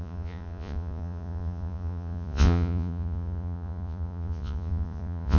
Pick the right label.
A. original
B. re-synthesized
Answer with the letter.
B